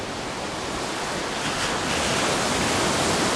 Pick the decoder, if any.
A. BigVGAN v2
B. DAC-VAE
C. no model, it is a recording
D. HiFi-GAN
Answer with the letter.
C